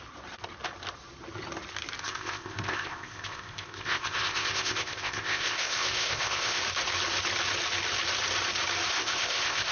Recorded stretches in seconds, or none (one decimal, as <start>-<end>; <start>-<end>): 0.0-2.0; 6.6-8.9